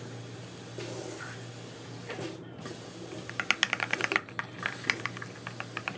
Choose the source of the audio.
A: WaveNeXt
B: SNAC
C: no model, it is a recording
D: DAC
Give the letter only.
C